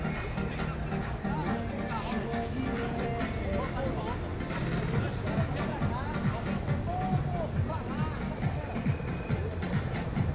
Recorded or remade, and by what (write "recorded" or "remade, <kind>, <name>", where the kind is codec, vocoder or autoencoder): recorded